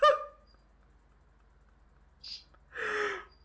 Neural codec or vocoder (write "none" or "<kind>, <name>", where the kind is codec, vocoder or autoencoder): none